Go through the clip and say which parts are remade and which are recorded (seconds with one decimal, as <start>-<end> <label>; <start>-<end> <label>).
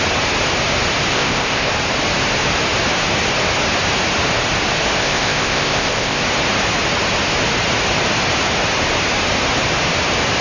0.0-1.1 recorded; 1.1-1.7 remade; 1.7-5.0 recorded; 5.0-6.2 remade; 6.2-10.4 recorded